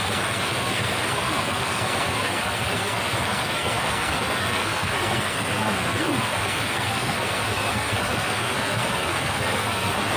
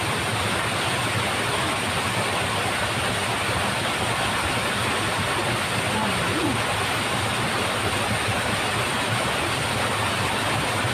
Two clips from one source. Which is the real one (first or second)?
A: second